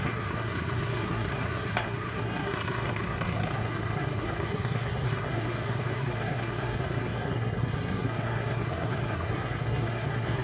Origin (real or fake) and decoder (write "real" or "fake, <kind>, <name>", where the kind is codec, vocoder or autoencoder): fake, codec, SNAC